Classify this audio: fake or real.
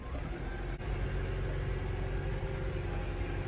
real